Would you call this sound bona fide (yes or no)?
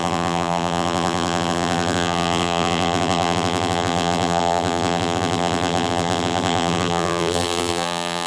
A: no